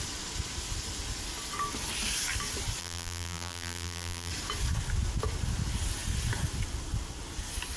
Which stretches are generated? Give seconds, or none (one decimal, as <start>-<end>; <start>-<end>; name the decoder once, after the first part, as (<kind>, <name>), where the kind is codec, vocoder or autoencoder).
2.8-4.3 (vocoder, BigVGAN v2)